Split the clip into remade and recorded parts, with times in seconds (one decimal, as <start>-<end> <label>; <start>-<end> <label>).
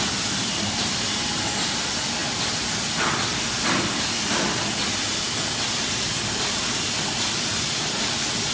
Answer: 0.0-8.5 recorded